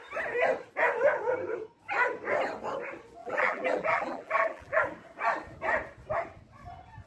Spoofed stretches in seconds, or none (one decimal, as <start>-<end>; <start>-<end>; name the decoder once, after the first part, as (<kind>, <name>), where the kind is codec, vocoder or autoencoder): 3.2-4.8 (vocoder, BigVGAN v2)